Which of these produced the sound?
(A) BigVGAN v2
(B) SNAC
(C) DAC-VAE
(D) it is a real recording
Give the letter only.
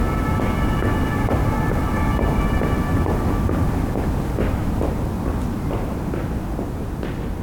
D